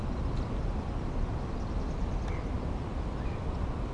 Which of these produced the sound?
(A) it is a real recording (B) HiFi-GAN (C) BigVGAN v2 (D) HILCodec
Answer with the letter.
A